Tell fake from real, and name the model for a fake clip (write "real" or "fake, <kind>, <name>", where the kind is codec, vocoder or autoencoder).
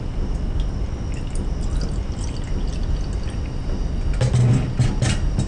real